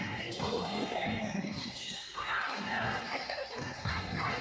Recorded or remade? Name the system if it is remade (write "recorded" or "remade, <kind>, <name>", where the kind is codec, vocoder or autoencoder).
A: remade, codec, SNAC